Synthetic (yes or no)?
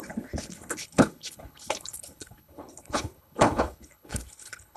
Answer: yes